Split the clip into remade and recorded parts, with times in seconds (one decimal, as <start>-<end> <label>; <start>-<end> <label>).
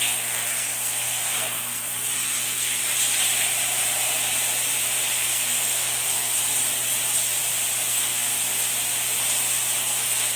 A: 0.0-2.8 remade; 2.8-5.1 recorded; 5.1-6.4 remade; 6.4-7.9 recorded; 7.9-8.3 remade; 8.3-9.8 recorded; 9.8-10.4 remade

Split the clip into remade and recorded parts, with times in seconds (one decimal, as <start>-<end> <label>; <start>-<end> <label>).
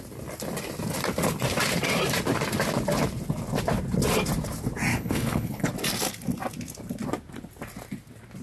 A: 0.0-4.9 recorded; 4.9-5.7 remade; 5.7-8.4 recorded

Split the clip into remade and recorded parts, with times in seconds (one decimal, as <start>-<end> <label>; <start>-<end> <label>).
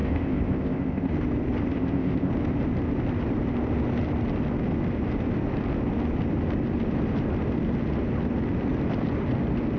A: 0.0-1.1 remade; 1.1-1.7 recorded; 1.7-2.3 remade; 2.3-9.8 recorded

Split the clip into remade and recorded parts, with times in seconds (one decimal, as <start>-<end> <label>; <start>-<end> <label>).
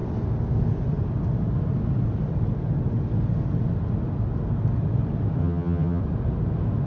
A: 0.0-5.4 recorded; 5.4-6.0 remade; 6.0-6.9 recorded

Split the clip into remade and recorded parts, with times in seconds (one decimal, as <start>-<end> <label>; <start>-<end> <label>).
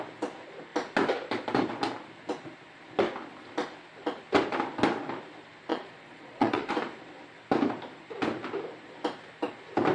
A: 0.0-5.7 recorded; 5.7-6.7 remade; 6.7-9.9 recorded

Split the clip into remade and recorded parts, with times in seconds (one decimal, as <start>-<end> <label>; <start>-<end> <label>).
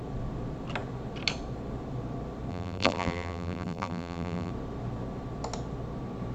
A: 0.0-2.5 recorded; 2.5-4.5 remade; 4.5-6.3 recorded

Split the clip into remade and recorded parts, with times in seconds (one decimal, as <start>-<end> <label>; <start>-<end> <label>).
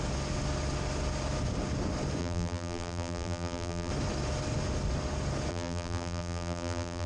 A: 0.0-2.2 recorded; 2.2-3.9 remade; 3.9-5.5 recorded; 5.5-7.1 remade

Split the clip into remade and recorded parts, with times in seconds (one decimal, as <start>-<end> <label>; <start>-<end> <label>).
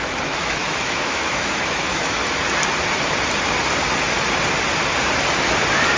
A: 0.0-2.2 remade; 2.2-6.0 recorded